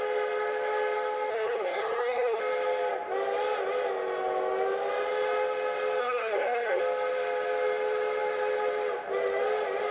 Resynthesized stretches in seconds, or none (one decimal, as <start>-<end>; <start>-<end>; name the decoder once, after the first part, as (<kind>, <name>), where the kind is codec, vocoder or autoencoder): 1.3-2.4 (codec, SNAC); 6.0-6.8